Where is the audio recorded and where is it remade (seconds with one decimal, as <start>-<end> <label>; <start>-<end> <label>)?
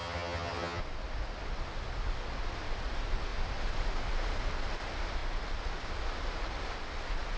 0.0-0.8 remade; 0.8-7.4 recorded